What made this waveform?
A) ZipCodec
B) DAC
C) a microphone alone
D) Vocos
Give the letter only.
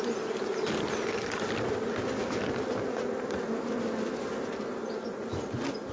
C